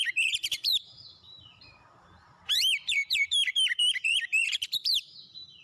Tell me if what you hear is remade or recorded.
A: remade